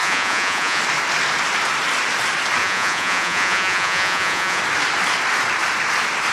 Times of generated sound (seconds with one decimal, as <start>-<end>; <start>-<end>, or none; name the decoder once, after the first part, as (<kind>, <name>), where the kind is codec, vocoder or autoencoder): 0.0-0.8 (vocoder, Vocos); 2.6-4.6